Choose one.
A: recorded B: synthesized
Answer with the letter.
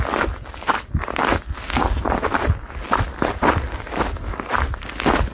A